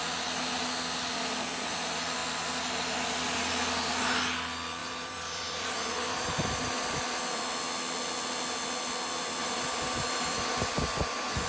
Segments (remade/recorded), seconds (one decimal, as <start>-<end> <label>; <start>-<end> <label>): 0.0-4.8 recorded; 4.8-7.2 remade; 7.2-9.4 recorded; 9.4-10.7 remade; 10.7-11.5 recorded